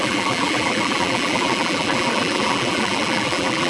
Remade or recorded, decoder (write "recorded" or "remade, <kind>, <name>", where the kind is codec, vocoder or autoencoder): remade, vocoder, BigVGAN v2